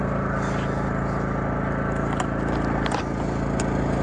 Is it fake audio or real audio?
real